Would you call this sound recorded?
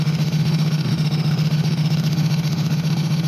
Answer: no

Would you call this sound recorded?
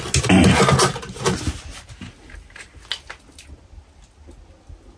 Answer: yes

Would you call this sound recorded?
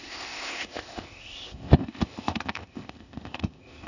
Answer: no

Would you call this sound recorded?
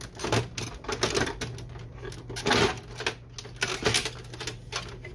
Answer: yes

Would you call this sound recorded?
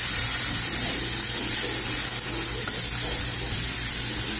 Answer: yes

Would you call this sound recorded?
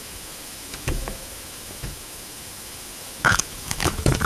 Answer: no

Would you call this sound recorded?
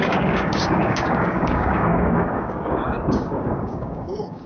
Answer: no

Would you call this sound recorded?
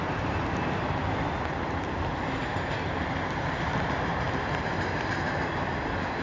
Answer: yes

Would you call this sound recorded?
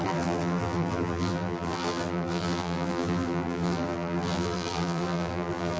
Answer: no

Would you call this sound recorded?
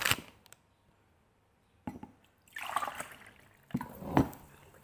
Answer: yes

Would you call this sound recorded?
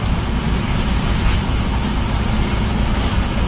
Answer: yes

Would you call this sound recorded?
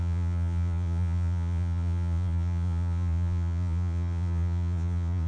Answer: no